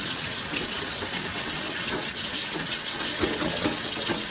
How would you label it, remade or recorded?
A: remade